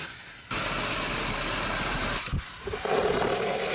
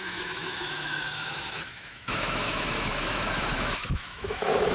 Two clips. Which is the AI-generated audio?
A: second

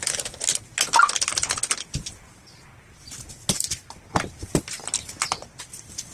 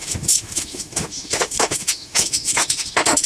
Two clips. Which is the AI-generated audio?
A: second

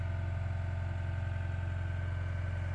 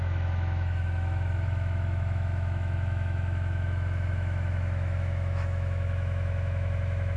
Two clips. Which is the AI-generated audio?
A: second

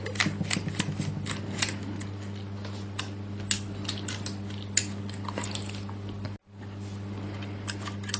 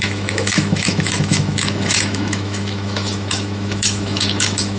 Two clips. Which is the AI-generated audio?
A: second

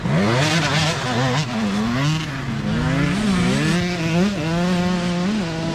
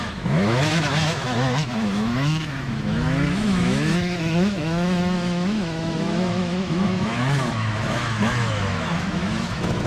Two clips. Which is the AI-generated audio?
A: second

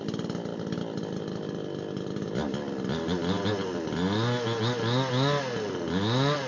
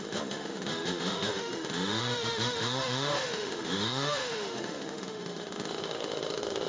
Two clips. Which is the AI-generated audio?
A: second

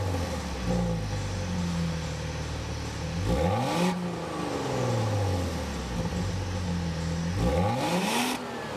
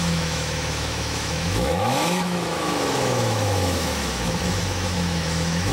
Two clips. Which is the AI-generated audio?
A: second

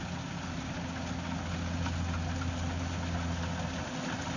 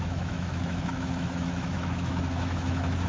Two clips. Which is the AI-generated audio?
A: second